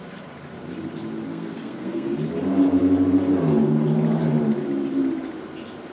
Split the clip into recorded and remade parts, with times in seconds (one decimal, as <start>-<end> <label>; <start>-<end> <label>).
0.0-1.3 recorded; 1.3-2.1 remade; 2.1-5.9 recorded